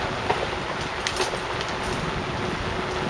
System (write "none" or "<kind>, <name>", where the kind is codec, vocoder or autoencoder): none